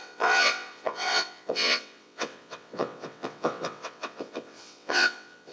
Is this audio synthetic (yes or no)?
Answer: yes